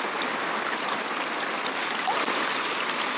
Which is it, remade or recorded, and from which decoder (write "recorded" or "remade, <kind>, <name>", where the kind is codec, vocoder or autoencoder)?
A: recorded